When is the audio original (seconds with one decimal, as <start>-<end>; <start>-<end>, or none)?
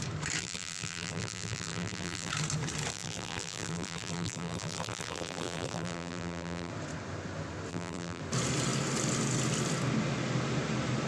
0.0-0.4; 2.3-2.9; 6.7-7.7; 8.2-11.1